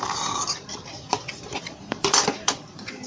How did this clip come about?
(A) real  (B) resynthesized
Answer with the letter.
B